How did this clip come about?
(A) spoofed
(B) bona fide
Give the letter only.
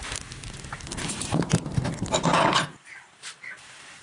B